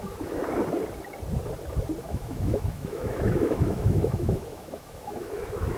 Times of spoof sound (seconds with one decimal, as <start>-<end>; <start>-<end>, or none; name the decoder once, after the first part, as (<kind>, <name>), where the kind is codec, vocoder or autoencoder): 0.0-0.4 (autoencoder, DAC-VAE); 2.0-5.8